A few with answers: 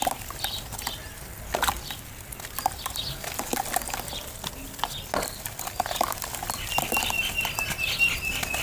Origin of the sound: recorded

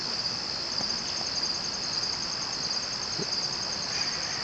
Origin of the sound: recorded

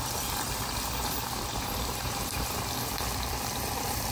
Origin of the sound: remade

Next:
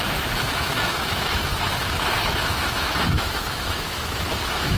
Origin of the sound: remade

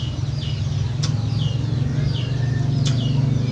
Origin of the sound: recorded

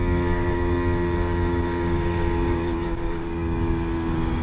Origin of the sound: remade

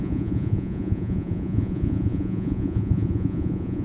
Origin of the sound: remade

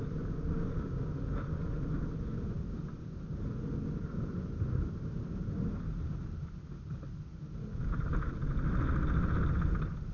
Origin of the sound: recorded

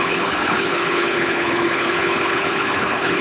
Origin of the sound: remade